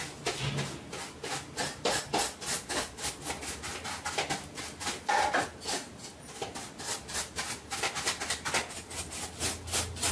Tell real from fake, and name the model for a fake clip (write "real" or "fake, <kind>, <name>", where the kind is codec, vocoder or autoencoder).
real